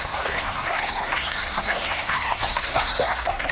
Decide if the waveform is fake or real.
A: fake